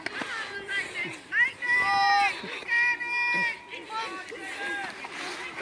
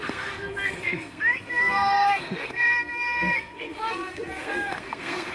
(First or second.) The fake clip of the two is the second